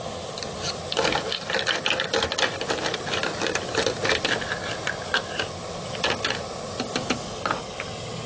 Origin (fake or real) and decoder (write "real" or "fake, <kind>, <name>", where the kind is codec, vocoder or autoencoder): real